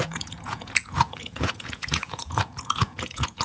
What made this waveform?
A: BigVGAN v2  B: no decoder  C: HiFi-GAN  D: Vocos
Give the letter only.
D